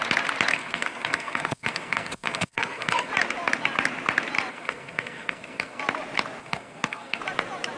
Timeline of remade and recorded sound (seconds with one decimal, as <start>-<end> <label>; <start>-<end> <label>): 0.0-0.5 recorded; 0.5-3.1 remade; 3.1-4.5 recorded; 4.5-5.8 remade; 5.8-6.4 recorded; 6.4-7.2 remade; 7.2-7.8 recorded